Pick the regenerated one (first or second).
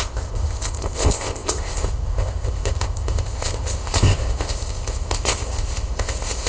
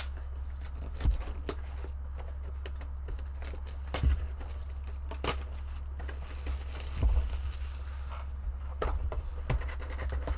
first